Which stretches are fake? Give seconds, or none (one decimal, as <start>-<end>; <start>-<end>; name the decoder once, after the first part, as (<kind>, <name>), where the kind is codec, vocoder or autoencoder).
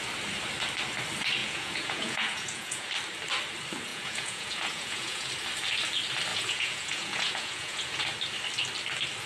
1.4-2.9 (vocoder, Vocos); 3.9-5.3; 6.3-8.0